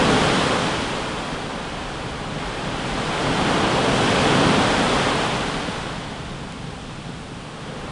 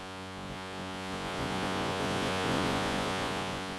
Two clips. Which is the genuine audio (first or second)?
first